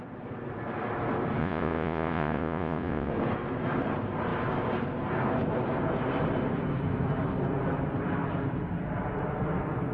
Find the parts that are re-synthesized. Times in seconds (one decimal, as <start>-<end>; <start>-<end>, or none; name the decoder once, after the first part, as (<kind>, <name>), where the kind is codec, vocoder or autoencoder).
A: 1.4-3.1 (vocoder, Vocos)